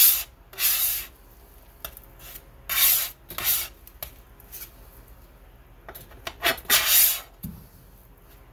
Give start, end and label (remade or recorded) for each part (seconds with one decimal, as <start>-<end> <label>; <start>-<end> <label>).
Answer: 0.0-8.5 recorded